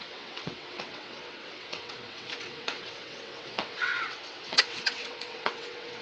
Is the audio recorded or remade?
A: remade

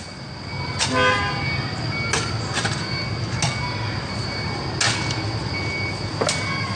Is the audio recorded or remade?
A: recorded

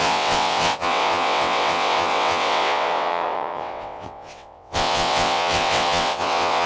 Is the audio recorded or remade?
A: remade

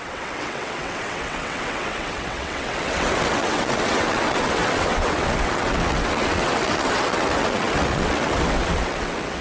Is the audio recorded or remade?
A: remade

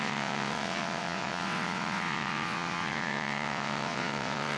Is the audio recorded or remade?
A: remade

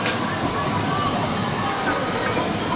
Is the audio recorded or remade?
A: recorded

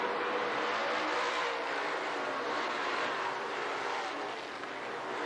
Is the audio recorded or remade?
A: recorded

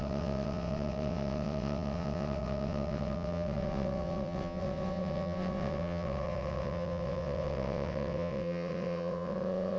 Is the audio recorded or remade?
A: remade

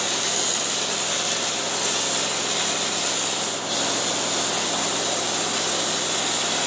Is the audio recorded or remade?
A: recorded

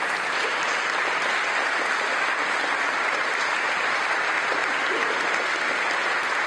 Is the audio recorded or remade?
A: recorded